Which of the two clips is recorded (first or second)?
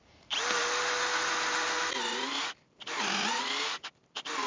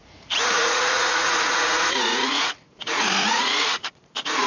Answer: first